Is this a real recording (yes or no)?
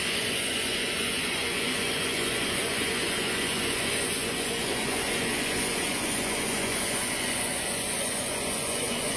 no